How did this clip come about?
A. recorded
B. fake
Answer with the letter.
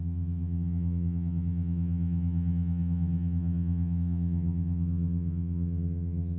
B